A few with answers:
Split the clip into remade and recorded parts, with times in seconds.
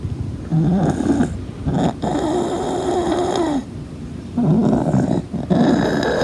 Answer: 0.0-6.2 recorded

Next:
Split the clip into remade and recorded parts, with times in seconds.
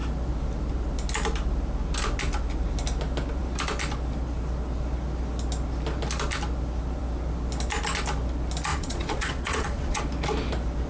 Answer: 0.0-8.7 recorded; 8.7-10.0 remade; 10.0-10.9 recorded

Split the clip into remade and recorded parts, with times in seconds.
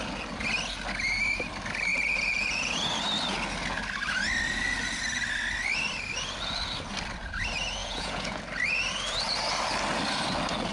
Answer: 0.0-1.9 recorded; 1.9-2.9 remade; 2.9-7.8 recorded; 7.8-8.4 remade; 8.4-10.7 recorded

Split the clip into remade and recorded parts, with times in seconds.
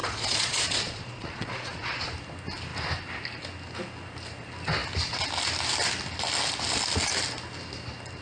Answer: 0.0-2.1 remade; 2.1-8.2 recorded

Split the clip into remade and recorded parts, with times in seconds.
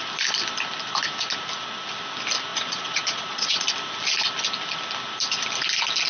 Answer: 0.0-2.5 recorded; 2.5-3.7 remade; 3.7-6.1 recorded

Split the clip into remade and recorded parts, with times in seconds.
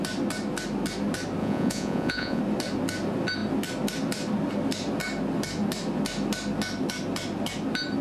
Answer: 0.0-1.4 recorded; 1.4-2.4 remade; 2.4-8.0 recorded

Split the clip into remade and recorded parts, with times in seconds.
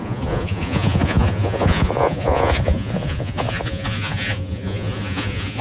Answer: 0.0-5.6 remade